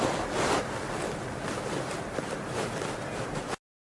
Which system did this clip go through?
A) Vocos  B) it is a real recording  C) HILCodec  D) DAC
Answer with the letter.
B